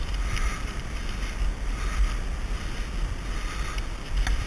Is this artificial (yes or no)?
no